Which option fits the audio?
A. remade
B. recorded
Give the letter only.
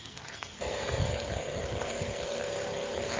A